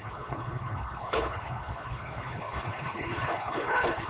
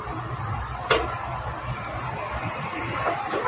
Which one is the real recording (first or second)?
second